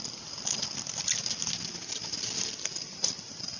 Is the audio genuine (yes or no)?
yes